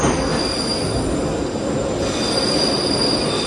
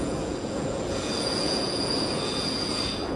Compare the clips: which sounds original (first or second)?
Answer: first